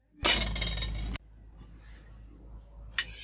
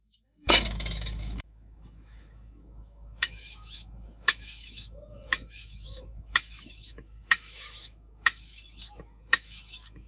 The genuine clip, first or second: first